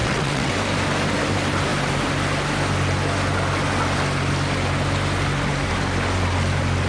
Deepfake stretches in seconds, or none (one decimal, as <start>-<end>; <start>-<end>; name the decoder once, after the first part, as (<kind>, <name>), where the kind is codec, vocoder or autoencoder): 0.0-0.5 (vocoder, WaveNeXt)